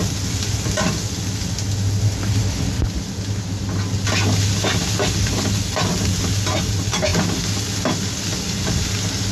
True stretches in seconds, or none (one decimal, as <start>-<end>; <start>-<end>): 0.0-9.3